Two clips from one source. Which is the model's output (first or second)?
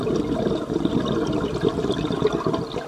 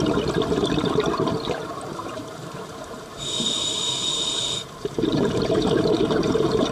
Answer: second